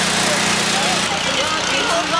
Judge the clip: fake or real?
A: real